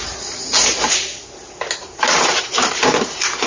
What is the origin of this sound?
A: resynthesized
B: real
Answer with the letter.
B